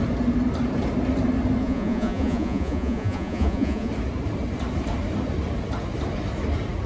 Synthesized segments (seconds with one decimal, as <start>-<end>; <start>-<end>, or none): 1.6-3.9